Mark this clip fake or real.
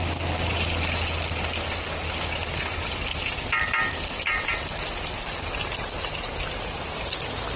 real